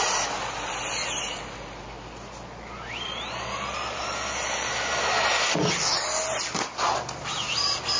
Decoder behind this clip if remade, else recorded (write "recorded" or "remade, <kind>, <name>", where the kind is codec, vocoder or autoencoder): recorded